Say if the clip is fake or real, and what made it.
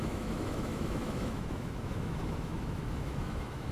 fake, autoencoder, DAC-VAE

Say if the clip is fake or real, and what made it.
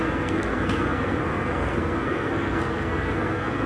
fake, codec, SNAC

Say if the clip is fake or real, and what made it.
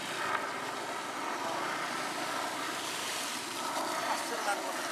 real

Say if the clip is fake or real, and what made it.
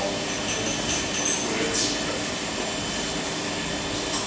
real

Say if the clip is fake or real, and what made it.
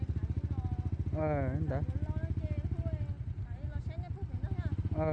real